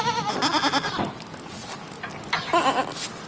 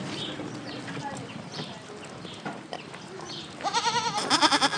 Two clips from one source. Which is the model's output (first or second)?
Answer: second